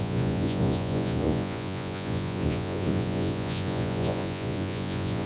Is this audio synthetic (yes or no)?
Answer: yes